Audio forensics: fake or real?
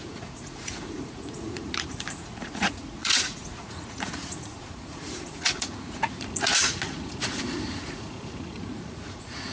fake